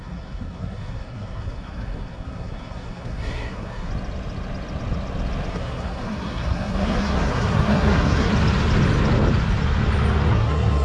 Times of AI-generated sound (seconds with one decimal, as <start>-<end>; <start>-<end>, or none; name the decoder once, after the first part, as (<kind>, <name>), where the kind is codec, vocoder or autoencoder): 0.0-3.9 (codec, SNAC); 5.5-8.3; 10.3-10.8